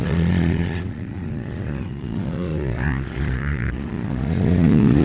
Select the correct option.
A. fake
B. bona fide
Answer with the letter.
A